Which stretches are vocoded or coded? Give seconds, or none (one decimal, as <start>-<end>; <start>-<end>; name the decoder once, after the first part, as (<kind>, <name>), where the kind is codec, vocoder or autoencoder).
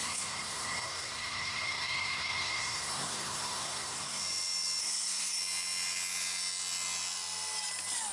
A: 0.0-4.2 (codec, SNAC); 4.8-5.4